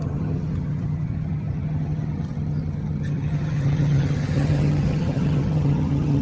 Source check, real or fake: fake